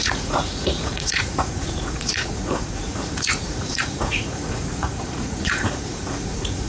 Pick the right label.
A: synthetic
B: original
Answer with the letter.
A